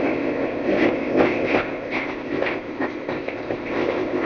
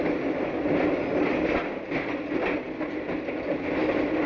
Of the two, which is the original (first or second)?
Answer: second